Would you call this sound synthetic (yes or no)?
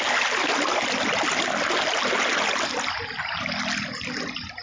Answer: no